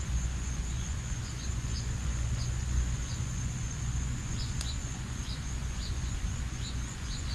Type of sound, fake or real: fake